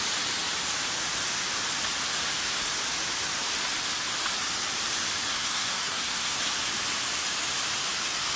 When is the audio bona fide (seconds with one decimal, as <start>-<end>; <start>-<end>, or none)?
0.0-5.3; 6.4-8.4